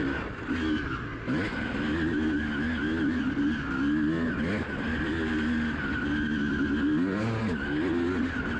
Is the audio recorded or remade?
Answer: recorded